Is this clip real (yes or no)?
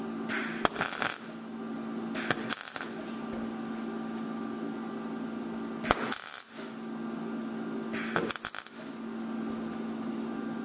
yes